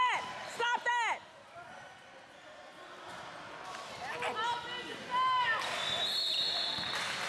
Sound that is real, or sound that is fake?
real